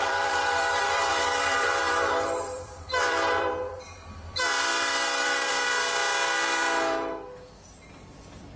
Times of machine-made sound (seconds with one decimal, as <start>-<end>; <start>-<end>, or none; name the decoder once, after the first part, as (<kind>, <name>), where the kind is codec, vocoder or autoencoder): 0.0-3.8 (vocoder, BigVGAN v2); 4.7-5.5